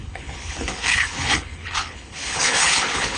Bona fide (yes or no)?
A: no